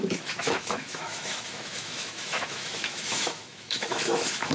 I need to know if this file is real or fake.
fake